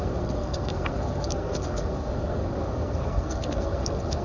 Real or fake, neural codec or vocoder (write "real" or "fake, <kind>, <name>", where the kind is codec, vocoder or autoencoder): fake, codec, SNAC